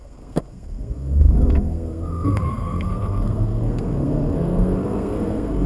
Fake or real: fake